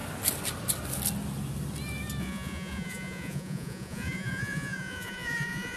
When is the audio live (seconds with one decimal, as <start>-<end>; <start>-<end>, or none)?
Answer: 0.0-2.2